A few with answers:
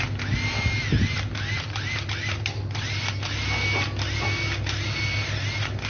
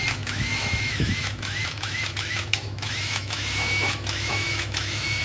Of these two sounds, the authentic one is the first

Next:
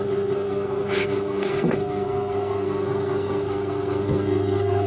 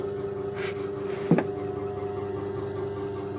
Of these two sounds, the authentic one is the second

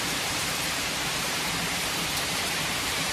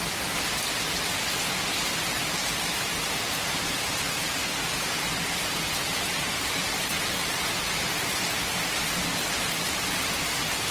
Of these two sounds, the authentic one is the second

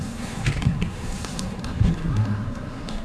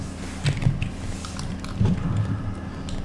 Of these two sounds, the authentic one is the second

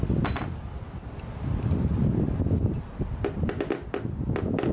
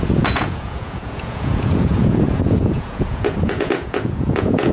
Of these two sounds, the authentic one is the first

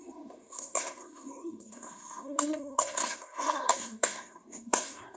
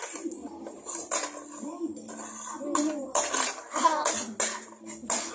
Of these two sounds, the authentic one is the second